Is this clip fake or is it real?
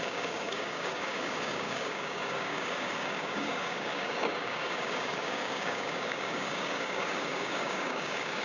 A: fake